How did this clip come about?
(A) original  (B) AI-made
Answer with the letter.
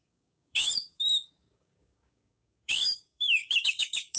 B